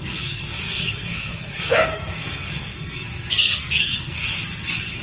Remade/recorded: remade